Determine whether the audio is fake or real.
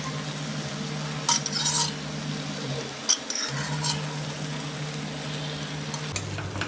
real